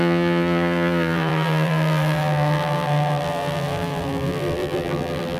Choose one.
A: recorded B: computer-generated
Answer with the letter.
B